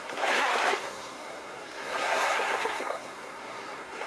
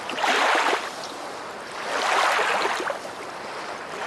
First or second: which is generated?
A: first